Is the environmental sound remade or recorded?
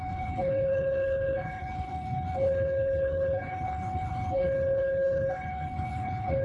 remade